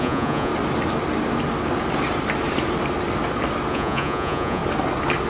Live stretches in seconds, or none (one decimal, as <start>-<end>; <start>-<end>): 0.5-3.7; 4.6-5.3